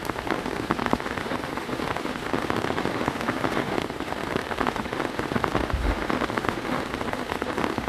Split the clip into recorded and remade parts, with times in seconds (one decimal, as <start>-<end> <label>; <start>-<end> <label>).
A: 0.0-7.9 remade